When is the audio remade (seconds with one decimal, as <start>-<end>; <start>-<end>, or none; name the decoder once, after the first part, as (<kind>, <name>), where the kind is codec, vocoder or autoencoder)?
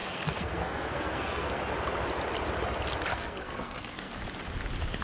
0.0-1.6 (codec, SNAC); 3.1-4.1